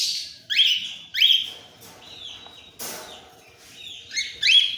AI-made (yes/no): no